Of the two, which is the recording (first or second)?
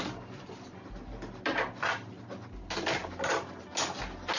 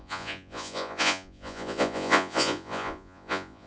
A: first